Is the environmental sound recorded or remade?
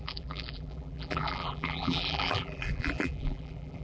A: remade